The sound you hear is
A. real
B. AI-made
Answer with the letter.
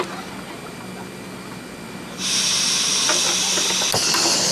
A